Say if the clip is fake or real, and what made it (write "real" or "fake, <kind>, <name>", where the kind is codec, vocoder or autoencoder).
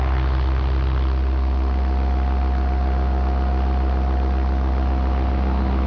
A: real